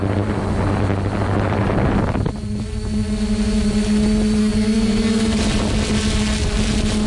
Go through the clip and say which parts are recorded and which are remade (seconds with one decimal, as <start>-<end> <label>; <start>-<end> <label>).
0.0-4.4 recorded; 4.4-5.4 remade; 5.4-7.1 recorded